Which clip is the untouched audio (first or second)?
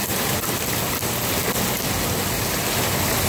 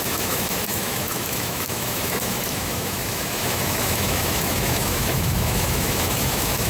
first